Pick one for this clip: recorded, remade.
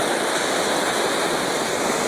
recorded